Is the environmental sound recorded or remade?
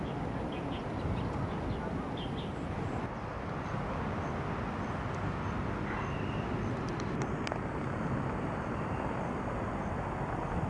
recorded